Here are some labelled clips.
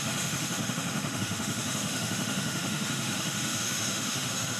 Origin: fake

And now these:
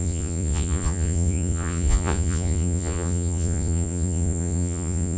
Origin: fake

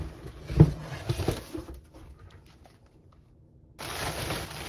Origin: real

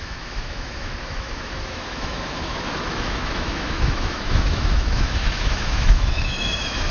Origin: fake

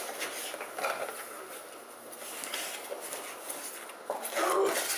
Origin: real